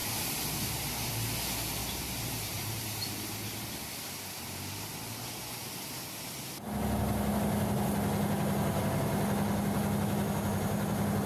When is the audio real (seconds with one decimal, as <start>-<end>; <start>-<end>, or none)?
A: 1.1-1.8; 2.8-11.3